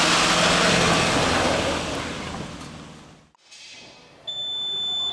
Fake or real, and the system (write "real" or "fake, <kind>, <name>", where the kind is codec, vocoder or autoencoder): real